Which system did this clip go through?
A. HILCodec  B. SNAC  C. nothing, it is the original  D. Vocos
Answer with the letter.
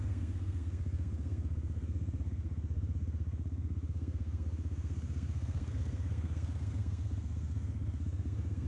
B